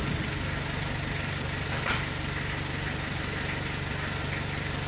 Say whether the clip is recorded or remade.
recorded